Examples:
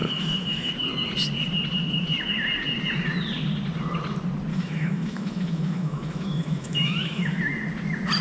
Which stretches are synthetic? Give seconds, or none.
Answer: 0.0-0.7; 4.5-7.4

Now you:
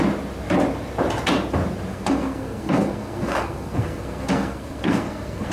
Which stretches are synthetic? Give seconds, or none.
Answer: 1.9-5.5

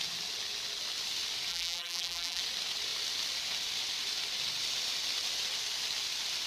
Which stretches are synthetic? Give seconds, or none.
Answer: 1.5-2.4